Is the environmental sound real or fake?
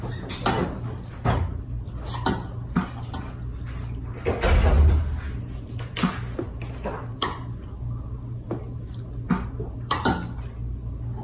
real